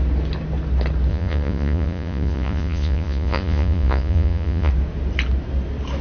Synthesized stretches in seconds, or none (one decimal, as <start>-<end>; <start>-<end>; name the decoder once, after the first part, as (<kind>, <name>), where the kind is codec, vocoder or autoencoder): 1.1-4.7 (vocoder, Vocos)